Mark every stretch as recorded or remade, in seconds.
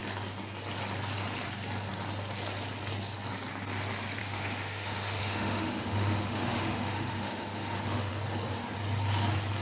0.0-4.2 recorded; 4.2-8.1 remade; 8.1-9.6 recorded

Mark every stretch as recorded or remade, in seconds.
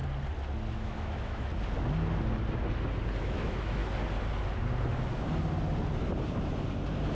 0.0-0.7 recorded; 0.7-1.5 remade; 1.5-3.2 recorded; 3.2-3.8 remade; 3.8-7.1 recorded